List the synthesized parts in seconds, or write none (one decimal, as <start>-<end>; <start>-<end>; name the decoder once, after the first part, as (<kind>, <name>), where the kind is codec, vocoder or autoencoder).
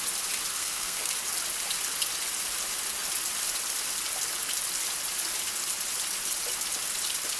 0.6-1.1 (codec, SNAC)